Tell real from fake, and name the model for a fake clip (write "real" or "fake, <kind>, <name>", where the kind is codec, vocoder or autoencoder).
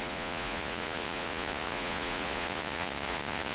fake, vocoder, Vocos